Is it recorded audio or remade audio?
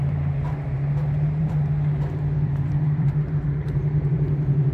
remade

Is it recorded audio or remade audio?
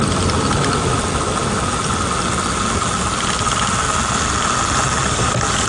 recorded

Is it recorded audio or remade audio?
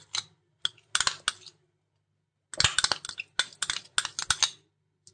recorded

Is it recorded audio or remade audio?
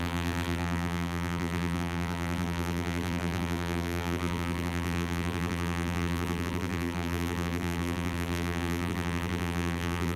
remade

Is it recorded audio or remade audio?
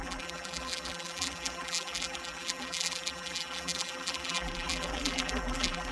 remade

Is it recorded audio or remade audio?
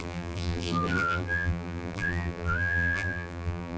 remade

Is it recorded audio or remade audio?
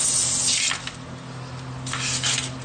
recorded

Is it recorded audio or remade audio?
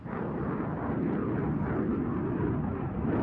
recorded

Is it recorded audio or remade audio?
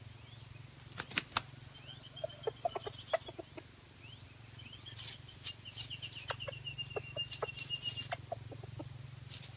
recorded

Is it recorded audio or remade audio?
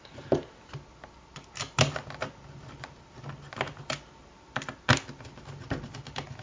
recorded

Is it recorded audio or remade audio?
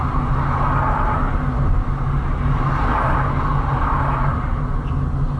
recorded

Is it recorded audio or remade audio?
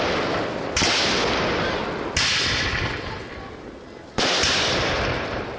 recorded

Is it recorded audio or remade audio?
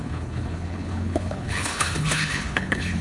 remade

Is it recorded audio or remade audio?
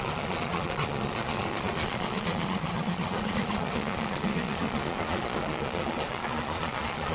remade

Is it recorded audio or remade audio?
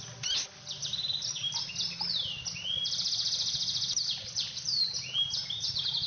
recorded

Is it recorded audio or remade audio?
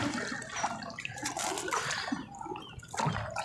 recorded